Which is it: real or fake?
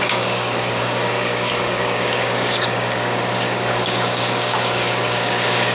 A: fake